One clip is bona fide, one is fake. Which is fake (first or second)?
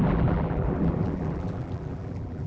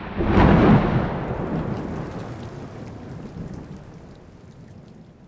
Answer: first